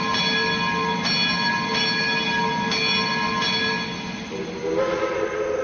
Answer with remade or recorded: recorded